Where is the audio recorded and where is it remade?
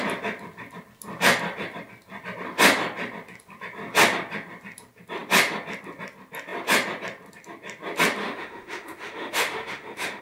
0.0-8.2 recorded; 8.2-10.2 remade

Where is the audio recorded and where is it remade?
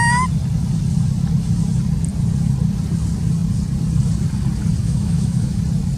0.0-4.8 recorded; 4.8-5.6 remade; 5.6-6.0 recorded